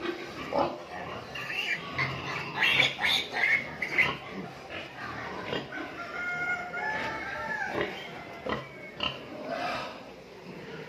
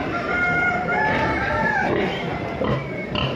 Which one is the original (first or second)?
first